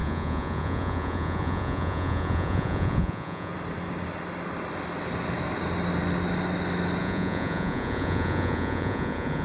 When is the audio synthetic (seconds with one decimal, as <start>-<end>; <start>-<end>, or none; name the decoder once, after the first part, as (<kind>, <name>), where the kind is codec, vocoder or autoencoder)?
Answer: 0.0-3.5 (vocoder, Vocos); 7.0-9.4